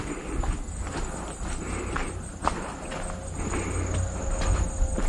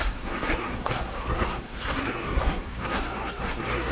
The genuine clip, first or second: first